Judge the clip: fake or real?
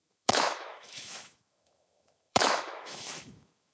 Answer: fake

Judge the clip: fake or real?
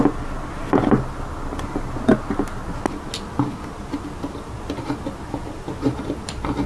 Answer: real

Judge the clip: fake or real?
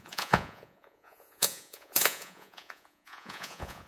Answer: fake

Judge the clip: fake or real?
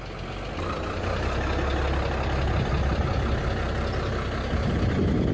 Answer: real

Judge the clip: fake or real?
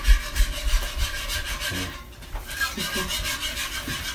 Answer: real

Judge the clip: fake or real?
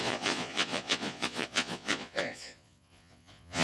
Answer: fake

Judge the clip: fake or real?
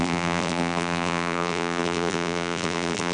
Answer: fake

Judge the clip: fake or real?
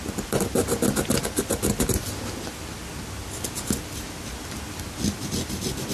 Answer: real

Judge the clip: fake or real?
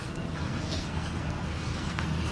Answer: fake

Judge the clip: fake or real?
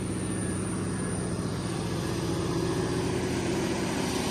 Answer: real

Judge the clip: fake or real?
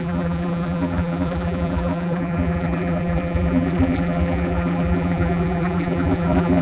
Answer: fake